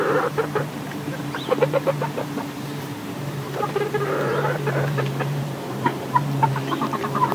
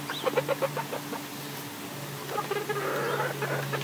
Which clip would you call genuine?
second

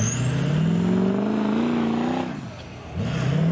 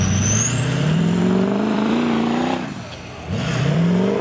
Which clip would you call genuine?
first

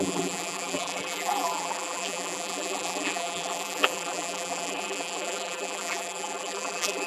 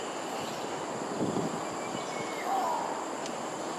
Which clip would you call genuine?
second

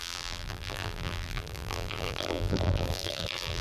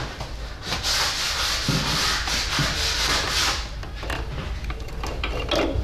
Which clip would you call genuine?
second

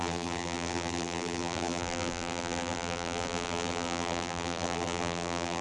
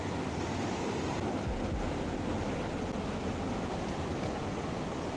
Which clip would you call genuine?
second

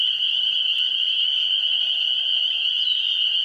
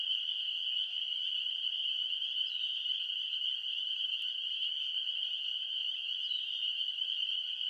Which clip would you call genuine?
first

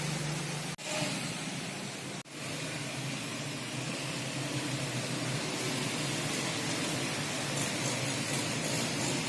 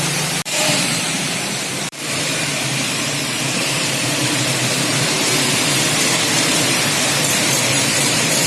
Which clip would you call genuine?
first